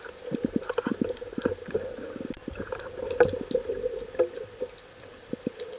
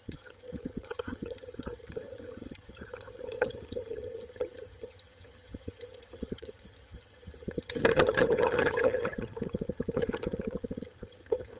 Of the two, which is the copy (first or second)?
second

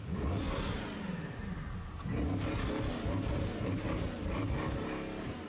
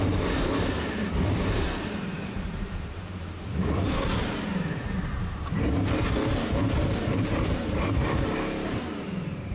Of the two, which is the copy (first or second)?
second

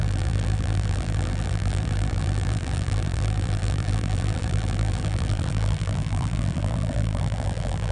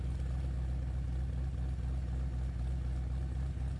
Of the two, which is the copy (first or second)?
first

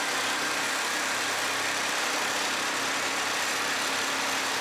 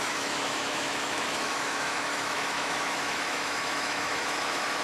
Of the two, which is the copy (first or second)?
second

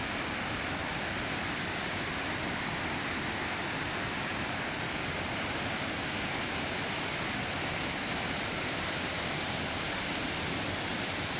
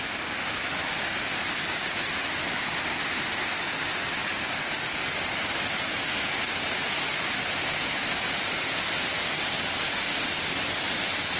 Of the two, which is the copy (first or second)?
first